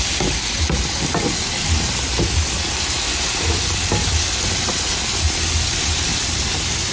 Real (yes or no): yes